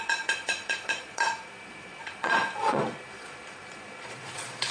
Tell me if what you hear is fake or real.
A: fake